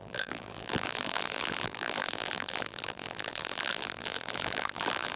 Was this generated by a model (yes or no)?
yes